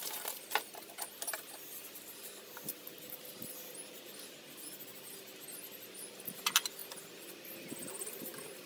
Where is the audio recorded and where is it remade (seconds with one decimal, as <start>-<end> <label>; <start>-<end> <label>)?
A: 0.0-8.7 recorded